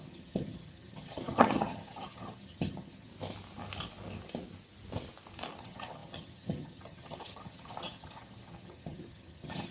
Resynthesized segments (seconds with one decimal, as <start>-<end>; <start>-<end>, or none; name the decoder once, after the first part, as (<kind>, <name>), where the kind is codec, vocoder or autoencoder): 0.0-3.1 (vocoder, HiFi-GAN); 5.6-9.7